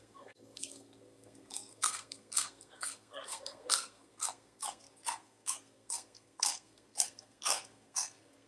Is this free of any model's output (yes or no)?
no